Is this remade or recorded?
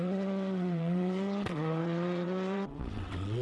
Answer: remade